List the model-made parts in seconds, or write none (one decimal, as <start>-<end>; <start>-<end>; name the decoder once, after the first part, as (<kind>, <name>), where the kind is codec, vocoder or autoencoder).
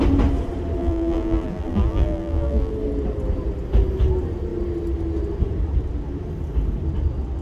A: 0.8-2.7 (vocoder, BigVGAN v2)